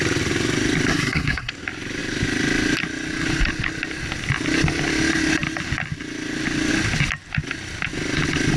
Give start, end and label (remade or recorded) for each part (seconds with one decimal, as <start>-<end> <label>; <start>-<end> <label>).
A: 0.0-0.9 recorded; 0.9-1.5 remade; 1.5-8.6 recorded